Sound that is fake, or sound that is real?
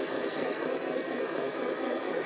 fake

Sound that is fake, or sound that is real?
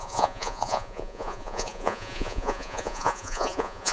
fake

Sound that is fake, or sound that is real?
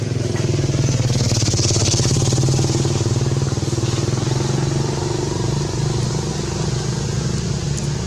real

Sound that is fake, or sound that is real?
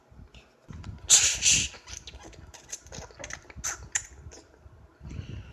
real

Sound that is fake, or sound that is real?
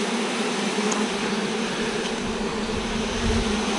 real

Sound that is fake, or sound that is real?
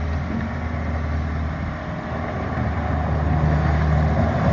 real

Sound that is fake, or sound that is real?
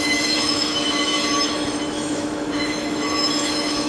fake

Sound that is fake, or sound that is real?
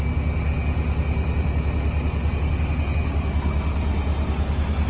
real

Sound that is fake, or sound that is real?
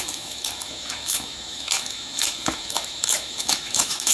fake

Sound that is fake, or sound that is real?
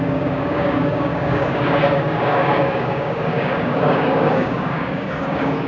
fake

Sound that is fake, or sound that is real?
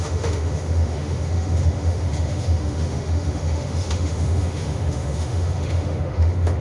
fake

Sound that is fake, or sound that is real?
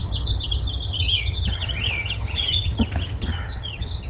fake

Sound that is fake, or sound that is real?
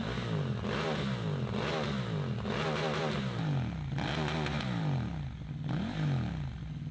real